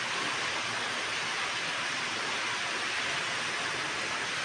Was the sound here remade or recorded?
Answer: recorded